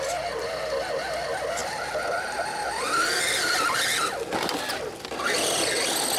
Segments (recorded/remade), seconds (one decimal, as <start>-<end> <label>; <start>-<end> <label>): 0.0-6.2 recorded